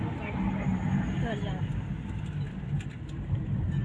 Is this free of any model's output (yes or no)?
yes